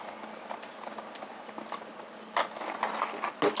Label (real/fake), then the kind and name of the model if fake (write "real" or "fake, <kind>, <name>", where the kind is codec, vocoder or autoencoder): real